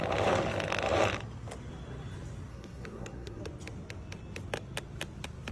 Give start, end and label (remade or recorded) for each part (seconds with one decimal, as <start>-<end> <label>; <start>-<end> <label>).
0.0-2.5 recorded; 2.5-3.4 remade; 3.4-5.5 recorded

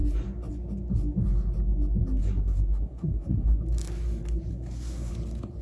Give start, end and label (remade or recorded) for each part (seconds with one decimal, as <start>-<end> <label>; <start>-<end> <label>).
0.0-2.2 recorded; 2.2-3.6 remade; 3.6-4.5 recorded; 4.5-5.1 remade; 5.1-5.6 recorded

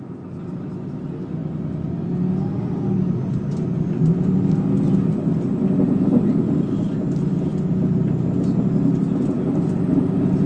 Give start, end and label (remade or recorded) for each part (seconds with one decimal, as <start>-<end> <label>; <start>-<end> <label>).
0.0-10.5 recorded